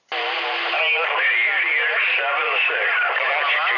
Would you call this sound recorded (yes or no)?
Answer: yes